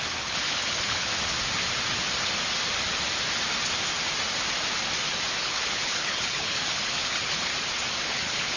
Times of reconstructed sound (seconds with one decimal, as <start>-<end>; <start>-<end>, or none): 0.0-1.1; 5.4-7.5; 8.0-8.6

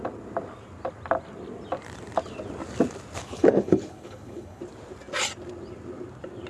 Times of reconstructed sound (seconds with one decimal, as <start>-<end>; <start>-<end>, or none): 3.2-4.6

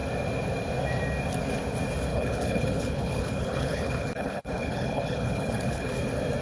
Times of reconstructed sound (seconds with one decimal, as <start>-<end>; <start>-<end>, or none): 2.1-5.9

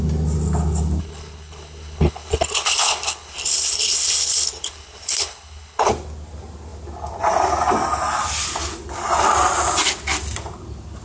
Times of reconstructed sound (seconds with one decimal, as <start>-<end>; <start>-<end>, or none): 1.0-5.9

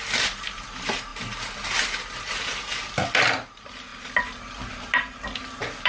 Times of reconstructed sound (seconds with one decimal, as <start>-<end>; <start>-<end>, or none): none

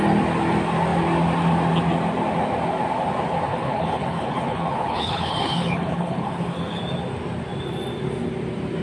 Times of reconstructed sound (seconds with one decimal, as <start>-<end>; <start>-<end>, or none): 3.5-6.8

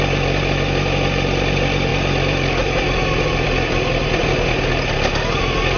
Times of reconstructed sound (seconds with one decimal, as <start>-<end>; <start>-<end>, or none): none

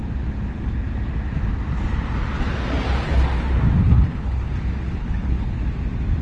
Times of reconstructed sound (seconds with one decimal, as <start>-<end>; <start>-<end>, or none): 3.8-4.5; 5.0-5.6